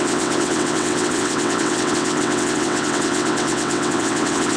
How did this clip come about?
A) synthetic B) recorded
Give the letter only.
A